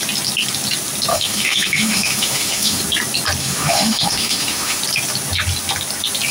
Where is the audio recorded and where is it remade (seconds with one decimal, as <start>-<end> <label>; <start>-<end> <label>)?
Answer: 0.0-1.1 recorded; 1.1-2.8 remade; 2.8-3.4 recorded; 3.4-4.8 remade; 4.8-6.3 recorded